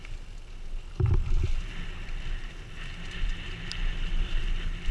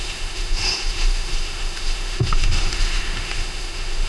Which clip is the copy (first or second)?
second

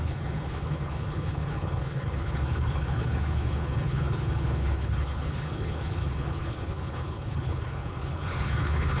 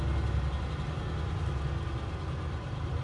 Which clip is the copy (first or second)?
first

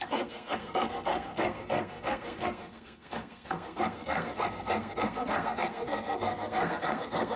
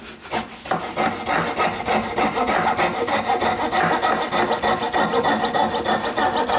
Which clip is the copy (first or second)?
first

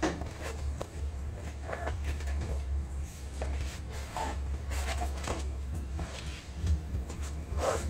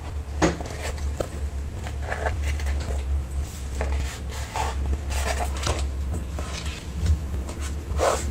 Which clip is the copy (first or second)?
first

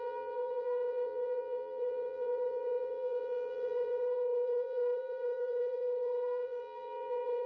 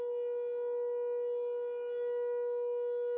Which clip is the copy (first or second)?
first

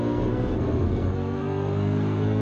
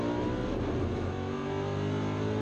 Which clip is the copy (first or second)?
first